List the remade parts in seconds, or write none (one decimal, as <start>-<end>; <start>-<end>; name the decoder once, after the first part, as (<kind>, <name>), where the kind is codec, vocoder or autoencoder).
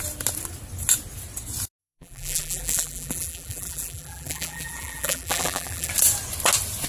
1.8-5.9 (vocoder, BigVGAN v2)